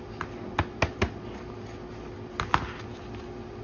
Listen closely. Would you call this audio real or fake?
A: real